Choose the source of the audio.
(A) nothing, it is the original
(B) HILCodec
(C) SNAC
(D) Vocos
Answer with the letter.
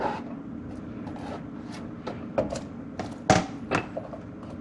A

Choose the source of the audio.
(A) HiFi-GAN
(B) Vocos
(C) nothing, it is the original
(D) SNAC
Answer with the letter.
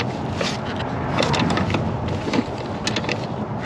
C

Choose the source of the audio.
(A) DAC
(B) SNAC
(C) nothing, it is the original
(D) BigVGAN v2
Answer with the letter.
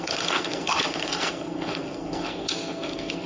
B